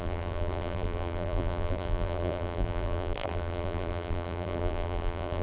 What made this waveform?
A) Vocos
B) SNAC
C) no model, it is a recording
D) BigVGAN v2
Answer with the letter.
D